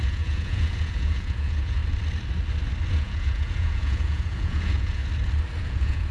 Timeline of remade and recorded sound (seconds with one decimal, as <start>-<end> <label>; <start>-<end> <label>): 0.0-1.8 remade; 1.8-2.9 recorded; 2.9-5.0 remade; 5.0-5.6 recorded; 5.6-6.1 remade